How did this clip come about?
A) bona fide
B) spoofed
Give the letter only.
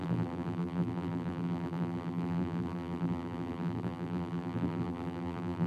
B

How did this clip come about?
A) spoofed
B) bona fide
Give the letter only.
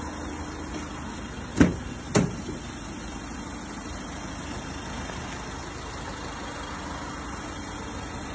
B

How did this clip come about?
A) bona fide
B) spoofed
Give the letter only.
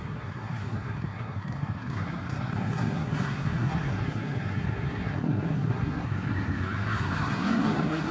B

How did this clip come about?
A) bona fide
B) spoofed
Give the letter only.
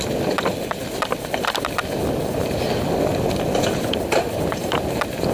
B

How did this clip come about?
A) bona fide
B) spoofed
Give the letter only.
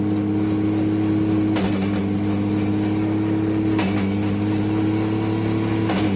A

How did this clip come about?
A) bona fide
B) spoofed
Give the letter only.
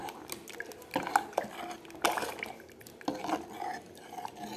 A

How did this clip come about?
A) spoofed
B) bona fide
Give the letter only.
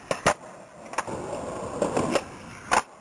B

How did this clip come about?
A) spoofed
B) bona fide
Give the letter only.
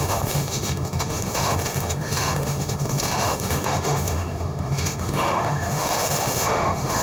A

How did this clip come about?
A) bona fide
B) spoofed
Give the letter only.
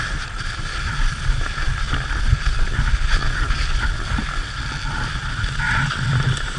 A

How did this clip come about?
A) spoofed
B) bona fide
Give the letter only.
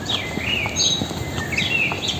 B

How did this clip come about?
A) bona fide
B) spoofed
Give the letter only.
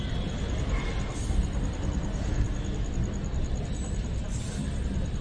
A